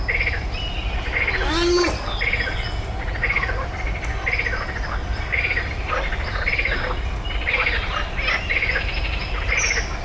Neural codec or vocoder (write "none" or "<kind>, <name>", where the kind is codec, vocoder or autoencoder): none